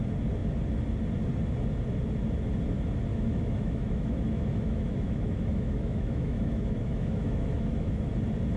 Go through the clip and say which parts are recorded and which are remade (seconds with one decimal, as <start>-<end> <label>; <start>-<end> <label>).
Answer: 0.0-3.1 recorded; 3.1-8.1 remade; 8.1-8.6 recorded